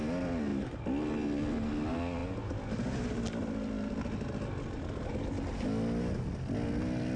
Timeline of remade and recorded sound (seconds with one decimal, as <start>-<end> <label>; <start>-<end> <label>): 0.0-7.2 recorded